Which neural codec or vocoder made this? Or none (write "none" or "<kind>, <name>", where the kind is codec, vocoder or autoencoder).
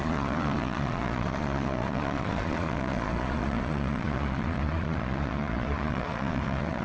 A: vocoder, Vocos